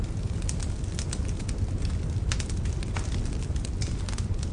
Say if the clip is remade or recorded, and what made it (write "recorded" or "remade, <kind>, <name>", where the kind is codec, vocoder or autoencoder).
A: recorded